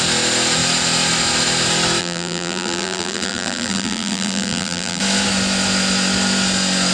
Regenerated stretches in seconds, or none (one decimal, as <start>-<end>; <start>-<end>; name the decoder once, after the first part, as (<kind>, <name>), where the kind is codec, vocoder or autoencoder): 2.0-5.0 (vocoder, BigVGAN v2)